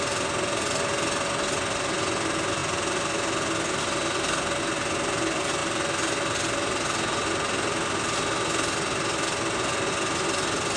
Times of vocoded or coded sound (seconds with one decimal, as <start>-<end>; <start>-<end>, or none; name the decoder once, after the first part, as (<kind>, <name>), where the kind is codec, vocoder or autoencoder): none